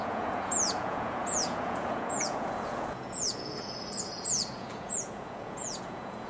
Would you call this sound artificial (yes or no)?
yes